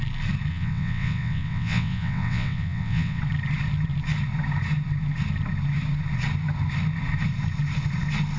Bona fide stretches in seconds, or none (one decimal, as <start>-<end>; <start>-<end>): 0.0-0.5; 3.2-8.4